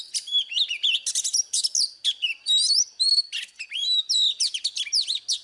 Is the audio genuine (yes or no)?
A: yes